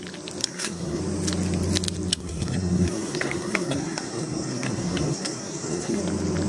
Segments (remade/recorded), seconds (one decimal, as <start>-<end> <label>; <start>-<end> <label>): 0.0-0.4 recorded; 0.4-1.0 remade; 1.0-2.1 recorded; 2.1-6.0 remade; 6.0-6.5 recorded